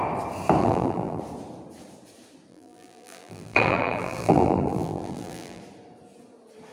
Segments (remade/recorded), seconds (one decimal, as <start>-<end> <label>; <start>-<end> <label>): 0.0-0.6 recorded; 0.6-1.2 remade; 1.2-2.5 recorded; 2.5-5.6 remade; 5.6-6.7 recorded